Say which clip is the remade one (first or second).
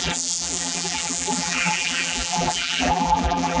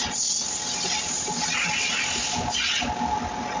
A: first